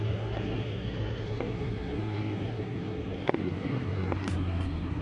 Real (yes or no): no